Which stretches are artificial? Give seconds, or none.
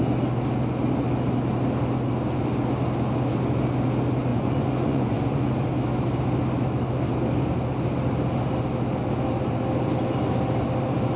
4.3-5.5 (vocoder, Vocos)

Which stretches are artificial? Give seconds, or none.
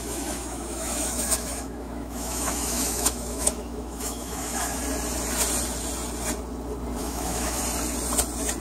0.0-4.8 (autoencoder, DAC-VAE); 7.0-7.6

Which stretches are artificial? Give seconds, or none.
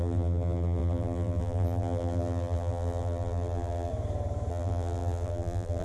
0.0-3.9 (vocoder, BigVGAN v2); 4.5-5.8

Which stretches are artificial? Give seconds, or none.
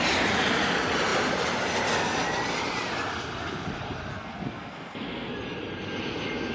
4.1-5.3 (codec, SNAC)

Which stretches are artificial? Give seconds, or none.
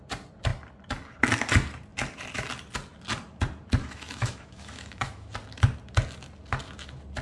3.8-5.3 (autoencoder, DAC-VAE)